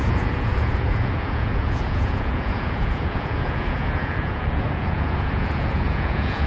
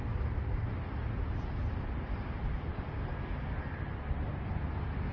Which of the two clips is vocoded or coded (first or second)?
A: first